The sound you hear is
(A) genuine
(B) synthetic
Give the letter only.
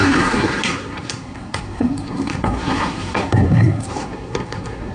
B